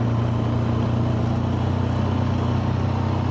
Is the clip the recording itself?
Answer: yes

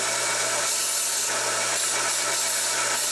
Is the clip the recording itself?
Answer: yes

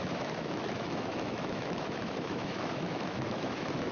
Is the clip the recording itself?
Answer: no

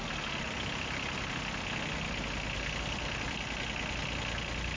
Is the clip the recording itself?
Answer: yes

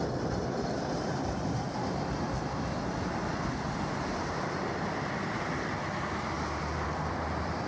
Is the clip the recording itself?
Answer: no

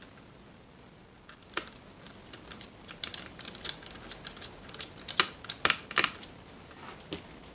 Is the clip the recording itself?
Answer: yes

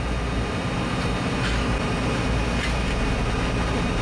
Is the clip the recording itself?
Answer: yes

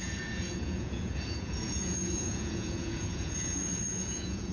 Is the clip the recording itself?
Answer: no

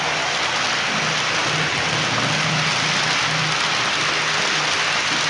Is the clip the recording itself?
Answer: yes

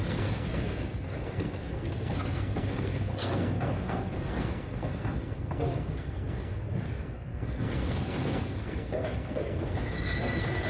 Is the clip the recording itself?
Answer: no